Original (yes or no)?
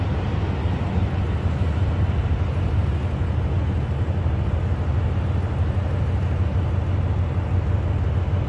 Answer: yes